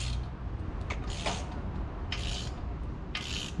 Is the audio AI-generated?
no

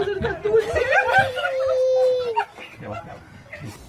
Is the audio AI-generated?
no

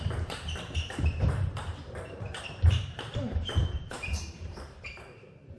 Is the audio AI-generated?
yes